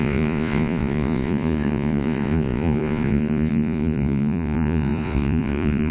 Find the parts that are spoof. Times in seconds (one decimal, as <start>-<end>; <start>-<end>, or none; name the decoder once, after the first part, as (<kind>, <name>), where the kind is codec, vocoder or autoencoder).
0.0-5.9 (vocoder, Vocos)